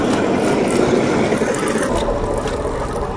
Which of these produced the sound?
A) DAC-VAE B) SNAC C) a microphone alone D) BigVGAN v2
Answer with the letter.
C